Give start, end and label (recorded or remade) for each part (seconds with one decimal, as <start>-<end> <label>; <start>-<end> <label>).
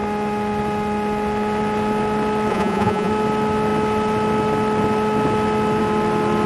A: 0.0-2.5 recorded; 2.5-3.1 remade; 3.1-6.5 recorded